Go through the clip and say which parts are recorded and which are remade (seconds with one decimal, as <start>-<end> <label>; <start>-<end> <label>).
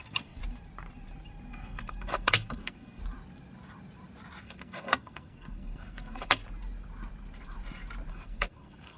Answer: 0.0-0.4 remade; 0.4-1.5 recorded; 1.5-3.0 remade; 3.0-4.4 recorded; 4.4-6.4 remade; 6.4-8.1 recorded; 8.1-9.0 remade